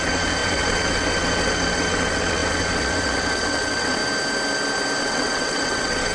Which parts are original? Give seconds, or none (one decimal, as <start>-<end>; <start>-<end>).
4.0-5.0